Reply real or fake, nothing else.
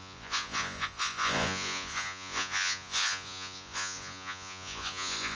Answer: fake